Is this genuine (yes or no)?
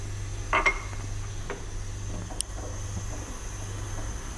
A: yes